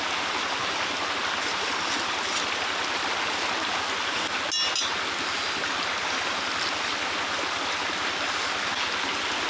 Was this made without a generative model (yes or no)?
yes